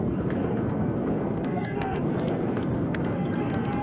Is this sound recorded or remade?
remade